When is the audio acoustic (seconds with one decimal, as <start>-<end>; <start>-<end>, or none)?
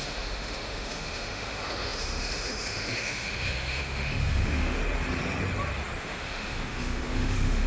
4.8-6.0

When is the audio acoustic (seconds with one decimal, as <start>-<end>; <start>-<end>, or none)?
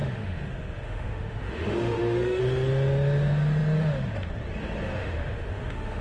2.4-5.0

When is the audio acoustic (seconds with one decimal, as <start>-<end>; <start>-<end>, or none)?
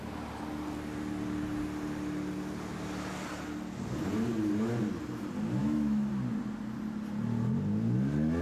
0.0-5.6; 6.1-8.4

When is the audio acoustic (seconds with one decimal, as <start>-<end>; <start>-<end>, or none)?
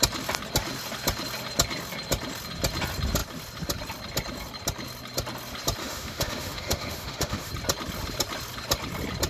0.0-5.8; 7.5-9.3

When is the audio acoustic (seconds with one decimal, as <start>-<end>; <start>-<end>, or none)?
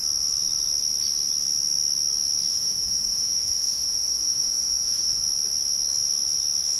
0.0-2.5; 5.2-6.8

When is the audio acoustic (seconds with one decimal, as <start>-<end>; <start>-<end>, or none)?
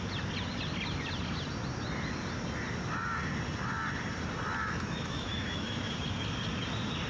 0.0-4.6; 6.0-7.1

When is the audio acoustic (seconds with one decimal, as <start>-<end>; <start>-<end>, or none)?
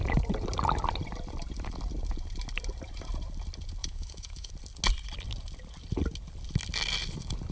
0.0-3.8; 4.5-7.5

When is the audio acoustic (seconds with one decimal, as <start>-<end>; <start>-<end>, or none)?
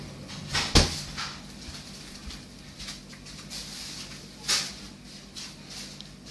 0.0-6.3